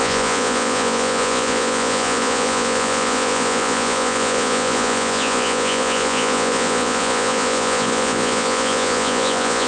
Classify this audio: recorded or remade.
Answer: remade